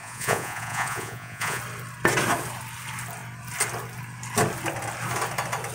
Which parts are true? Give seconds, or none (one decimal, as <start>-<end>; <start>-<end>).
1.6-5.7